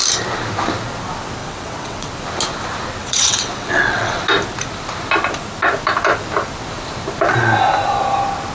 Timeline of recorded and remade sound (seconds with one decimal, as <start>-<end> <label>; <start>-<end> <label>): 0.0-1.4 recorded; 1.4-2.1 remade; 2.1-3.0 recorded; 3.0-4.2 remade; 4.2-8.5 recorded

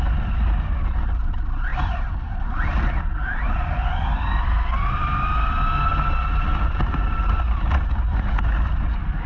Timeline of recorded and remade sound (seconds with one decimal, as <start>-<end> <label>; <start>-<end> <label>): 0.0-9.3 recorded

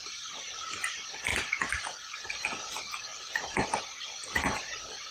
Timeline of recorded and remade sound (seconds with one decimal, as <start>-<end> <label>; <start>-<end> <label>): 0.0-1.3 recorded; 1.3-2.3 remade; 2.3-5.1 recorded

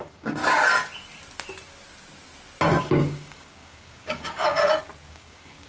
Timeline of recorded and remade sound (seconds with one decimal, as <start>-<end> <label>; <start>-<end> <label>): 0.0-0.4 remade; 0.4-2.8 recorded; 2.8-4.6 remade; 4.6-5.1 recorded; 5.1-5.7 remade